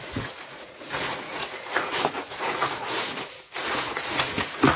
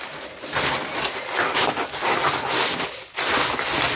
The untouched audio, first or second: second